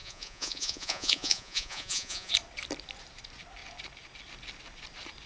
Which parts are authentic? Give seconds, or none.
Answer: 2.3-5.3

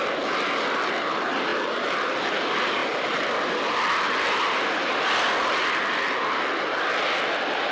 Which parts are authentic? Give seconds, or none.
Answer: 0.0-7.7

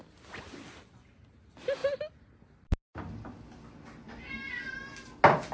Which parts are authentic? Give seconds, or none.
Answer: 0.0-5.5

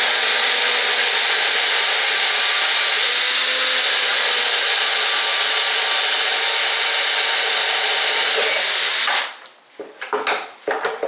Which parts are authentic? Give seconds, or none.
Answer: 0.0-11.1

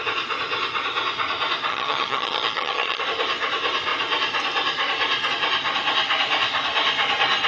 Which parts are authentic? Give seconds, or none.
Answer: 0.0-1.7; 3.0-7.5

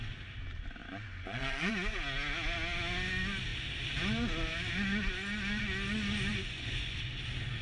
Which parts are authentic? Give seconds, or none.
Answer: 0.0-0.8; 1.7-6.3; 7.0-7.6